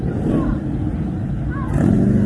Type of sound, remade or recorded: recorded